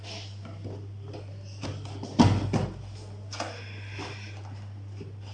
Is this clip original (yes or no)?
yes